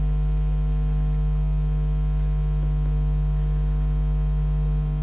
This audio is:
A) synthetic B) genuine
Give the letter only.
B